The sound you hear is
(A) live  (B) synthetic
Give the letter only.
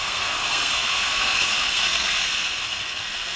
B